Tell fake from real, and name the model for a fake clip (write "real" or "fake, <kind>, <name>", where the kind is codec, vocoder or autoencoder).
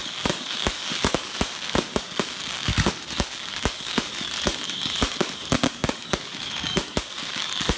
fake, codec, DAC